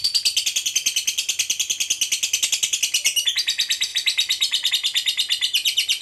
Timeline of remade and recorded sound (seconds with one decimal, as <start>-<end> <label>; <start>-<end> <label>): 0.0-3.9 recorded; 3.9-4.7 remade; 4.7-6.0 recorded